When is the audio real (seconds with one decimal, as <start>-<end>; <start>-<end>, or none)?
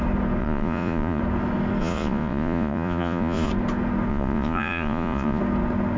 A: 0.0-0.4; 1.2-1.8; 3.5-4.1; 5.4-6.0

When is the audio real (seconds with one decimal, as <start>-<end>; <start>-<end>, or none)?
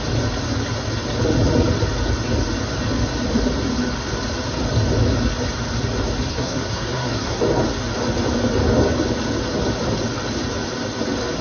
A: 0.0-6.3; 7.4-11.4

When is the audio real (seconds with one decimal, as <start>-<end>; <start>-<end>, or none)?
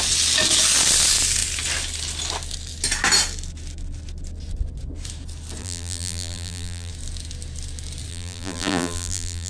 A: 0.0-5.6; 6.9-8.1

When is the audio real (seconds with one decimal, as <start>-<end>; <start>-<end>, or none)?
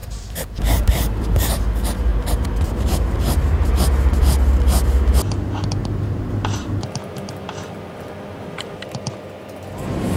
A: 1.6-2.1; 3.7-5.8; 7.9-10.2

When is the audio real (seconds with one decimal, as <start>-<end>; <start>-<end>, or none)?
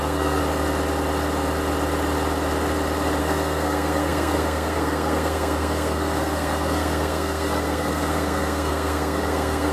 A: 0.4-3.2